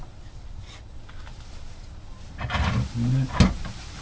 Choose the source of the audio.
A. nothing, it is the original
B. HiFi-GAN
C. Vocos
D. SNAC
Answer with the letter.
A